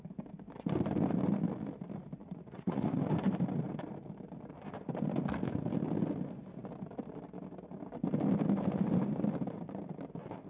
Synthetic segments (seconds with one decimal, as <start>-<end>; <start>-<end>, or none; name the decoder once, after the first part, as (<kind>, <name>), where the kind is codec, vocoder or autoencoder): 2.2-3.0 (vocoder, Vocos)